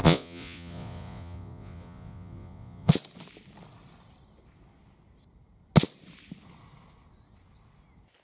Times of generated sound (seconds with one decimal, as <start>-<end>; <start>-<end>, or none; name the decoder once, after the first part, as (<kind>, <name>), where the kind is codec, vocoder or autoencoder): 0.0-2.9 (vocoder, Vocos)